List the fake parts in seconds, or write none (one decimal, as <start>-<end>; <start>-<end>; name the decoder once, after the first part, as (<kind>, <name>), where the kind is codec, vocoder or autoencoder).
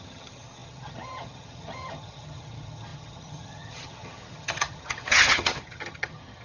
0.0-6.4 (vocoder, HiFi-GAN)